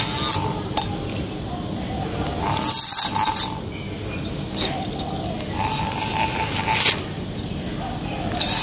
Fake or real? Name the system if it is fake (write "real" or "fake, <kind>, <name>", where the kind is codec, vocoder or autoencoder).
real